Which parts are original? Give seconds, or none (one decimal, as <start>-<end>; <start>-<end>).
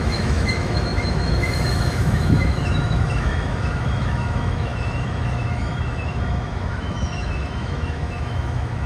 none